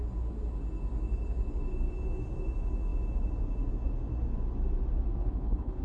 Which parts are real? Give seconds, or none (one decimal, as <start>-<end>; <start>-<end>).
0.0-5.2